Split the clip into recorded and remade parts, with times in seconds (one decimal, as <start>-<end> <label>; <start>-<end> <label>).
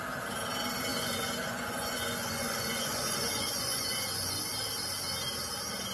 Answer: 0.0-0.9 recorded; 0.9-4.4 remade; 4.4-5.9 recorded